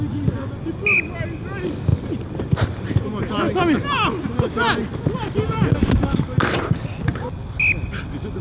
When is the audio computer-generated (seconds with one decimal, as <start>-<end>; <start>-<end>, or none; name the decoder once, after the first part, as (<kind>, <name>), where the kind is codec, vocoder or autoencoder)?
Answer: none